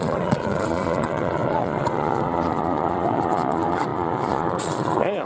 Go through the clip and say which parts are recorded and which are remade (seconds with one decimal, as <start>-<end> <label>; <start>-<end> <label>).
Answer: 0.0-5.3 remade